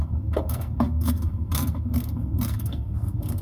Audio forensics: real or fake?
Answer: fake